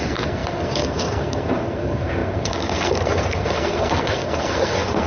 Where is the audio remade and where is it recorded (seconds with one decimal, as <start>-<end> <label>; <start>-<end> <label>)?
0.0-5.1 remade